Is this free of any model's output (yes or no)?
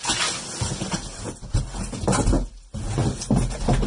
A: yes